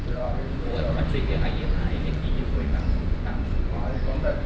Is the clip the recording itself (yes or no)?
no